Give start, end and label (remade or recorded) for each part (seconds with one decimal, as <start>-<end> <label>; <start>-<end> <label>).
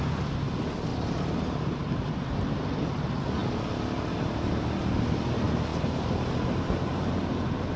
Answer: 0.0-0.9 recorded; 0.9-1.8 remade; 1.8-5.7 recorded; 5.7-7.8 remade